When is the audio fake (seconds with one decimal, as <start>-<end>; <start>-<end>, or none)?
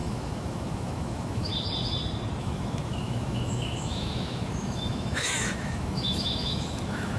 0.0-1.5; 2.4-7.2